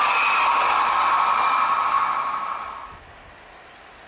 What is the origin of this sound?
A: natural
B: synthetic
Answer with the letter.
A